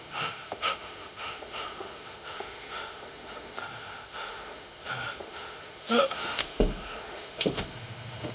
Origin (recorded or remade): remade